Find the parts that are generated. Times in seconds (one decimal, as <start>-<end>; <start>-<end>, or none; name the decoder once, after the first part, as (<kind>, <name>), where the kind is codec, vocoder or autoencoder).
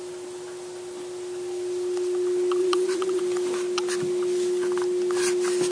2.6-3.2 (vocoder, WaveNeXt)